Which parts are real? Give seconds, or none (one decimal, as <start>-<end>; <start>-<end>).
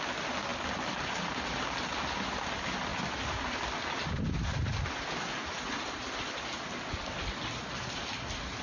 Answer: 0.0-8.6